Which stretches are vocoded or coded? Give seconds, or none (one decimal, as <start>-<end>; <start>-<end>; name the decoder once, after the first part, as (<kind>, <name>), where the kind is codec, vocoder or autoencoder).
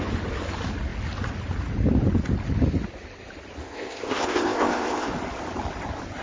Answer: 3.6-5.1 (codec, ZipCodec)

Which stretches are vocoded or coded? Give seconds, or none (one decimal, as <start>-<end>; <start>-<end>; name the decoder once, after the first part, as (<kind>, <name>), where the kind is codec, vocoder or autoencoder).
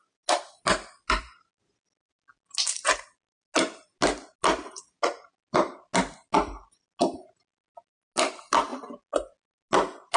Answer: none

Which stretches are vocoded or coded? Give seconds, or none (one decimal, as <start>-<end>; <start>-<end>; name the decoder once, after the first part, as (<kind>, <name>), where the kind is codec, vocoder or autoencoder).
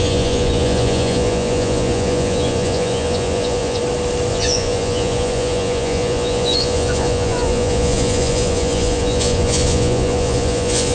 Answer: 0.0-3.8 (vocoder, Vocos); 4.3-10.9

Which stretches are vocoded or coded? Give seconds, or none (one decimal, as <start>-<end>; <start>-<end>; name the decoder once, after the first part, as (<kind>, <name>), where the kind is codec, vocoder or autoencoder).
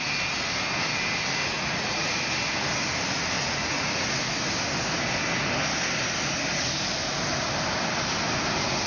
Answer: 1.4-2.1 (vocoder, Vocos); 3.4-4.3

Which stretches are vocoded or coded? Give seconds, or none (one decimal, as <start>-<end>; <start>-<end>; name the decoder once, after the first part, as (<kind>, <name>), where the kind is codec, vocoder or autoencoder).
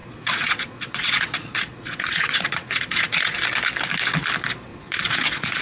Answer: 0.0-3.4 (vocoder, Vocos); 4.7-5.6